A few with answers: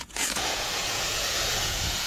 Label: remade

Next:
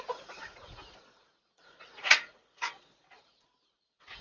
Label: remade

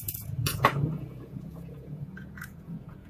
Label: remade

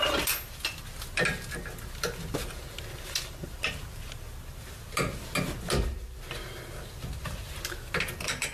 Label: recorded